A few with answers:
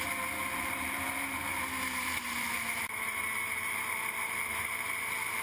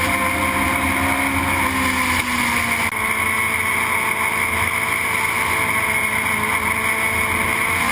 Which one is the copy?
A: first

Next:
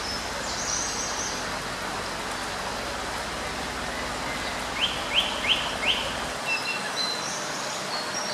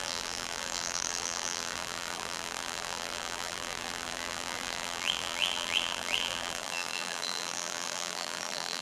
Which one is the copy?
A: second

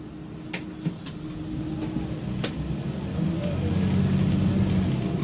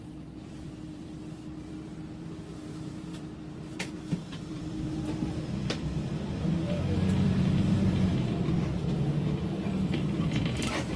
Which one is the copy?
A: second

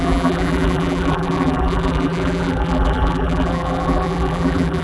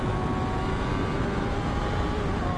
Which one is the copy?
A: first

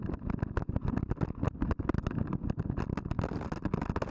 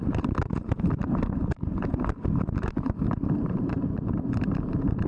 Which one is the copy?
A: second